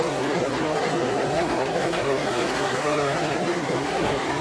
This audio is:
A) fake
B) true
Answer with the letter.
A